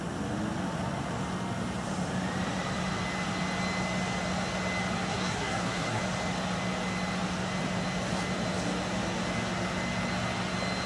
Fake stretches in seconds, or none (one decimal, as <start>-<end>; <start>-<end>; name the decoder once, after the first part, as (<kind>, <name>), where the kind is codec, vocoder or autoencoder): 5.1-6.0 (codec, SNAC)